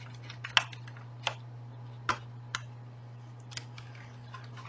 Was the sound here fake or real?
real